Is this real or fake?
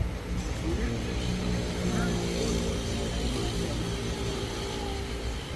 real